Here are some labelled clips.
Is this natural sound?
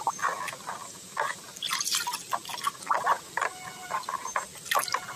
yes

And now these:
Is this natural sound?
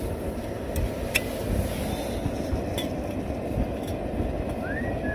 yes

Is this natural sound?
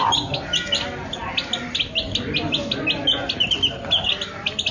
yes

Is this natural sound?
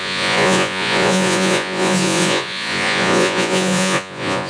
no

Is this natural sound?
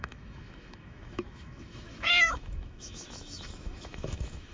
no